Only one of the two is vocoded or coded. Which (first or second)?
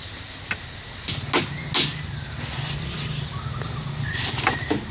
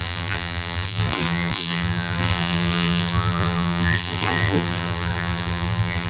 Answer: second